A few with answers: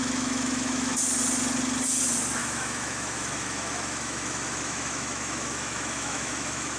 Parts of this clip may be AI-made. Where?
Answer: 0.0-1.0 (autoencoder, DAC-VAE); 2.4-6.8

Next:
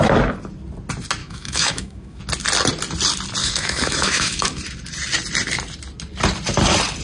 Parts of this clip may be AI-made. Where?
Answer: 1.2-2.2 (autoencoder, DAC-VAE); 3.4-4.6